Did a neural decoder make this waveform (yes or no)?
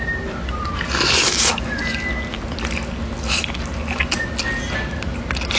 no